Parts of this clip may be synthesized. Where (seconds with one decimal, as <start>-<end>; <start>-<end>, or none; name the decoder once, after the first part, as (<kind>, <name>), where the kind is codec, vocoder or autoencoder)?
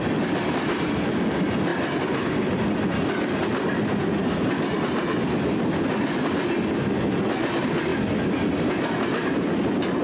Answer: none